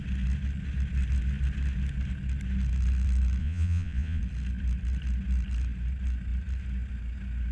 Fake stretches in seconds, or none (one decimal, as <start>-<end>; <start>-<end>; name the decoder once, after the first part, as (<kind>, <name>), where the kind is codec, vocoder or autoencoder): 3.4-4.2 (vocoder, Vocos)